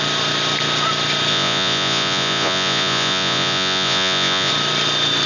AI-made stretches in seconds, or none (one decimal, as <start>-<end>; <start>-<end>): 1.3-4.5